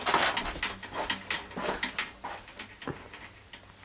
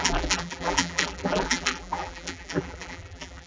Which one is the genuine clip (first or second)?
first